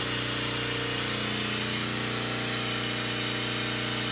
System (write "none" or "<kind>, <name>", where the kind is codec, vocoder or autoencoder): none